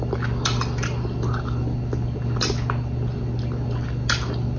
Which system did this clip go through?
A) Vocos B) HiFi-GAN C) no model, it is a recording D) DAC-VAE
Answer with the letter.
C